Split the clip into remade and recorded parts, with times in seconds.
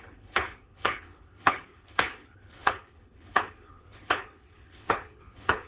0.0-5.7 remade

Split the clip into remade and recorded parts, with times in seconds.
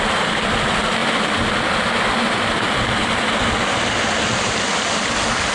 0.0-5.5 recorded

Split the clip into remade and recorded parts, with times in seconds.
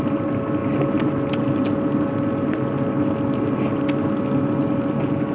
0.0-5.3 recorded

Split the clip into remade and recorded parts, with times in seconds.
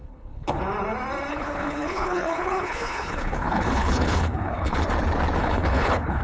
0.0-0.6 remade; 0.6-1.3 recorded; 1.3-4.8 remade; 4.8-5.4 recorded; 5.4-6.2 remade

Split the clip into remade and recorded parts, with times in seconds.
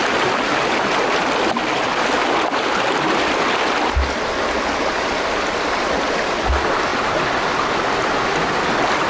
0.0-9.1 recorded